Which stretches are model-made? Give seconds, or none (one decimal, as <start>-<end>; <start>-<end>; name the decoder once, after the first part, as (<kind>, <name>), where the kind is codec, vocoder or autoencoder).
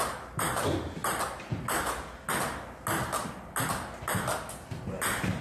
none